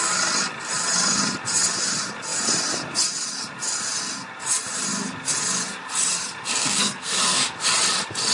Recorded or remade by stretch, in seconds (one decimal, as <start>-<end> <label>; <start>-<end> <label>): 0.0-6.5 recorded; 6.5-7.4 remade; 7.4-8.3 recorded